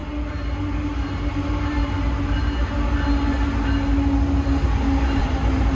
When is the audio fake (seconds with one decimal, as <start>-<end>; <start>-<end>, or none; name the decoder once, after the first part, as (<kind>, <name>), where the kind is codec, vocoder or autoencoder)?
1.3-1.8 (vocoder, BigVGAN v2); 5.2-5.7